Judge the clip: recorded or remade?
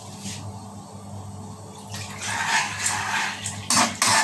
recorded